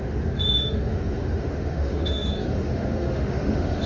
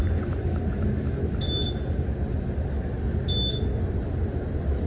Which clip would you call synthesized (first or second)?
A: first